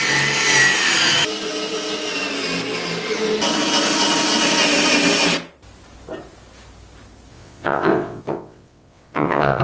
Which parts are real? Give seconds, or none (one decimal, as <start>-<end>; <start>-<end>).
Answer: 0.0-7.3